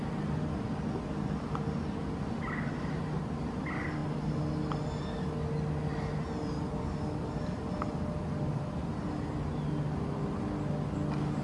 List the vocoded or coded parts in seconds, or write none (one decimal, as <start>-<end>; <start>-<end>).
none